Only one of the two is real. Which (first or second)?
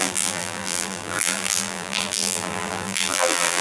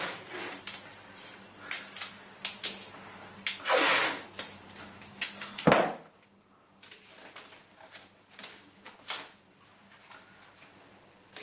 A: second